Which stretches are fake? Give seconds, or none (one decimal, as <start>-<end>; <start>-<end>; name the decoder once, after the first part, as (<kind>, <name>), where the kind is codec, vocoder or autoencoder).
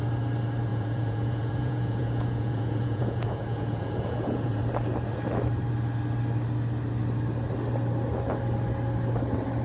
0.7-4.6 (vocoder, Vocos)